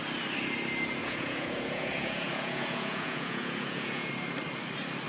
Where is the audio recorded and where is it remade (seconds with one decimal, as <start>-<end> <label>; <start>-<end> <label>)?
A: 0.0-1.0 recorded; 1.0-4.1 remade; 4.1-5.1 recorded